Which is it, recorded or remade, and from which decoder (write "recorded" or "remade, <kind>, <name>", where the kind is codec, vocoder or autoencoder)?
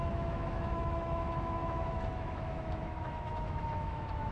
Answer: remade, autoencoder, DAC-VAE